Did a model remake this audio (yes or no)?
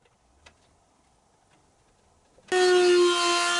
no